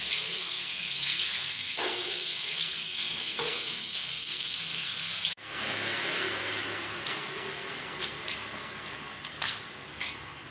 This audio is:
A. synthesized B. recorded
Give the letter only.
A